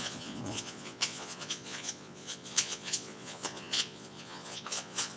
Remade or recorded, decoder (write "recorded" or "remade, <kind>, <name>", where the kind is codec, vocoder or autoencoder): remade, vocoder, Vocos